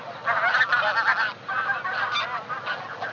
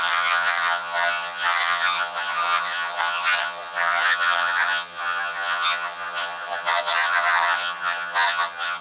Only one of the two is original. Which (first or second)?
first